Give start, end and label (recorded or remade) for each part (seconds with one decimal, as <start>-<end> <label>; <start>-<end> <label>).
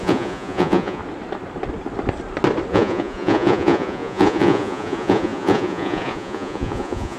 0.0-1.0 remade; 1.0-2.7 recorded; 2.7-7.2 remade